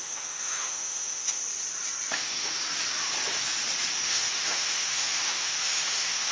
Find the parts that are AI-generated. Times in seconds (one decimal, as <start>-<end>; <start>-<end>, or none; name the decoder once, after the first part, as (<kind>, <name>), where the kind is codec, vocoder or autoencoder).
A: 0.0-1.4 (autoencoder, DAC-VAE); 2.1-2.6; 4.0-6.3